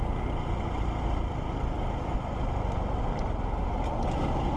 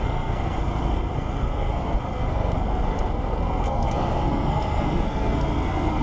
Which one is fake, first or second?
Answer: second